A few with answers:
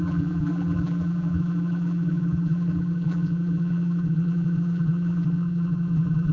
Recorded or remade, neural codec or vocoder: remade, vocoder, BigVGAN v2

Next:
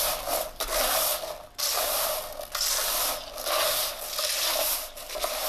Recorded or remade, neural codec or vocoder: recorded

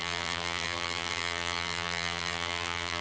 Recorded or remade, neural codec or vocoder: remade, vocoder, BigVGAN v2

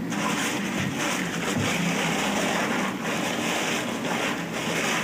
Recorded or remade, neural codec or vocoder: recorded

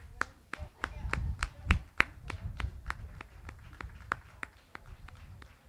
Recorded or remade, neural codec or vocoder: remade, vocoder, BigVGAN v2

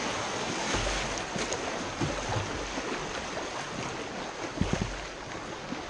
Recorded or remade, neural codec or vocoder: recorded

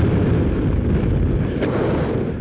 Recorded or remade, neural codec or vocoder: recorded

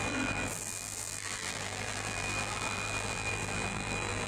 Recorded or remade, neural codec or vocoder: remade, vocoder, BigVGAN v2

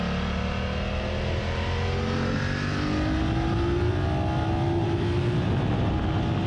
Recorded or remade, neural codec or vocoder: recorded